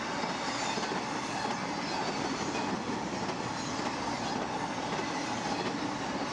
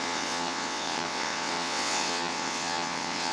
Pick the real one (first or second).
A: first